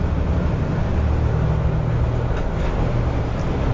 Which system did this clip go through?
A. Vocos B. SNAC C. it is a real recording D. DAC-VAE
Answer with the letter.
C